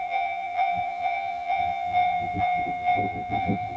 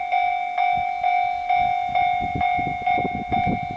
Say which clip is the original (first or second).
second